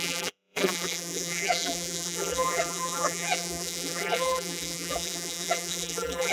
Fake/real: fake